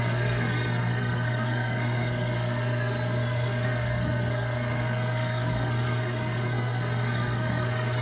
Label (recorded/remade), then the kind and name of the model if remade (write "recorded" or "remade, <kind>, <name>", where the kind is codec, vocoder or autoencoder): remade, codec, SNAC